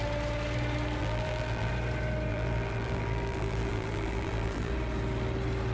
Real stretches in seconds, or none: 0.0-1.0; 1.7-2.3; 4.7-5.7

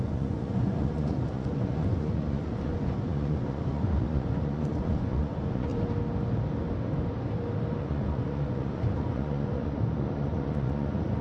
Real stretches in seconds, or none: 5.7-7.8

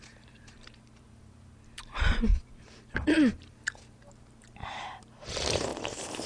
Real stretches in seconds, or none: none

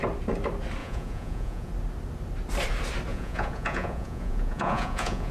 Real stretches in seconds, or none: 0.0-0.8; 1.7-3.1

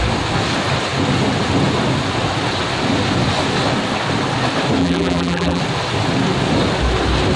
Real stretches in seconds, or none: 0.0-4.8; 5.6-7.4